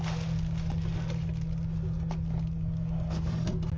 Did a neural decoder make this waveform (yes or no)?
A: no